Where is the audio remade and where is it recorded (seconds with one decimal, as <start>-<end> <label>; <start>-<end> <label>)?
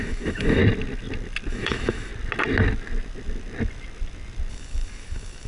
0.0-0.6 remade; 0.6-1.5 recorded; 1.5-2.1 remade; 2.1-4.5 recorded; 4.5-5.5 remade